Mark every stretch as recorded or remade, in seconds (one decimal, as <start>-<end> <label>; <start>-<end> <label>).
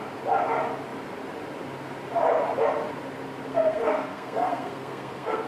0.0-3.5 recorded; 3.5-5.5 remade